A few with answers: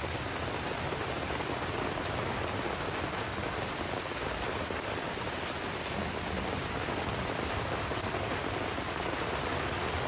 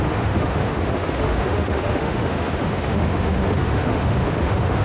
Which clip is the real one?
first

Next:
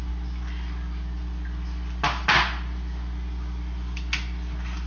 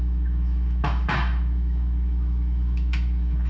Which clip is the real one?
first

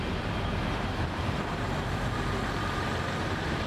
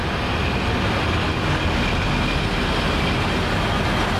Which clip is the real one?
second